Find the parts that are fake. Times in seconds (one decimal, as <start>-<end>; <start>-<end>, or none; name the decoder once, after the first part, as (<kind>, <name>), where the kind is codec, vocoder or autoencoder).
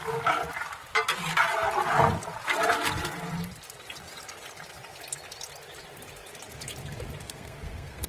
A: 7.2-8.1 (codec, SNAC)